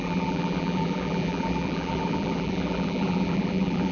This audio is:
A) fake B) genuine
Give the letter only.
A